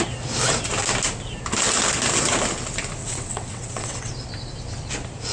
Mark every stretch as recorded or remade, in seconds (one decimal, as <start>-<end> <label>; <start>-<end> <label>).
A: 0.0-3.0 recorded; 3.0-4.1 remade; 4.1-5.3 recorded